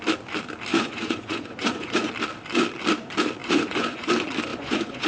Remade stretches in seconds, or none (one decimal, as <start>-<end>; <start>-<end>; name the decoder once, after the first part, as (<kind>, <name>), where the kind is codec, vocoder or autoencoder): 0.7-2.1 (vocoder, Vocos); 3.4-4.1; 4.5-5.1